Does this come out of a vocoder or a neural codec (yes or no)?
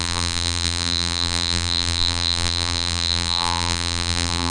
yes